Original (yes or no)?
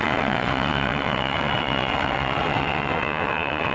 no